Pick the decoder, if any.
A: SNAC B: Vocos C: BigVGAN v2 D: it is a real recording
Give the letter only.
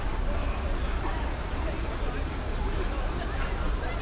C